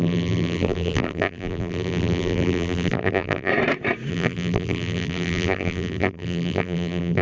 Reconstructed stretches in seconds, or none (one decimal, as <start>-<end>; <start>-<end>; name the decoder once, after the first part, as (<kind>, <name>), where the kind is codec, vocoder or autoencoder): 0.0-3.5 (vocoder, BigVGAN v2); 4.1-7.2